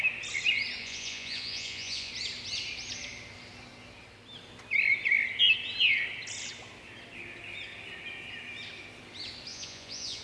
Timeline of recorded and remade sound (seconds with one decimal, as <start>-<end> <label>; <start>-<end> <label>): 0.0-0.8 recorded; 0.8-2.1 remade; 2.1-9.5 recorded; 9.5-10.2 remade